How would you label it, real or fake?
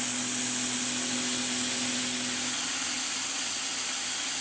real